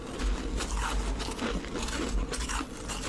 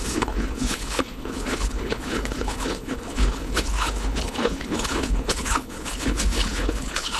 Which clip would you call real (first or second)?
first